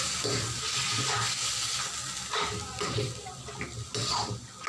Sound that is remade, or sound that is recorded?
recorded